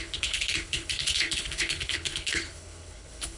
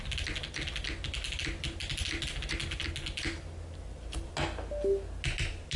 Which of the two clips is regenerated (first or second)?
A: first